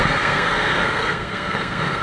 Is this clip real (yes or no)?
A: no